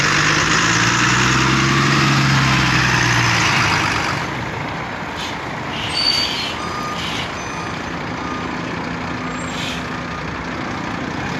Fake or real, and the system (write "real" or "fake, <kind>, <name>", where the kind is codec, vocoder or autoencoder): real